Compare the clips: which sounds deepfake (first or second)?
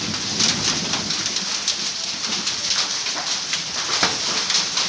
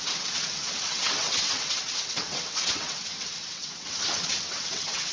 second